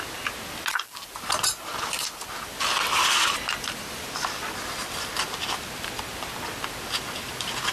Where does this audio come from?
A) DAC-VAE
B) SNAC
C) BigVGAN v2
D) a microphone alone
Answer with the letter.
D